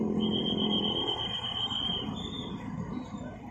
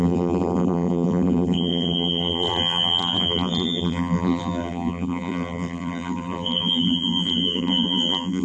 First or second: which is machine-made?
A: second